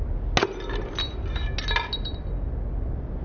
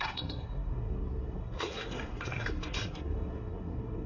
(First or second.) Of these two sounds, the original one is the first